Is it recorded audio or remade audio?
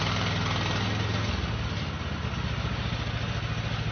recorded